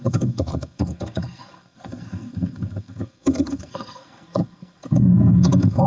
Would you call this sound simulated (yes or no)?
yes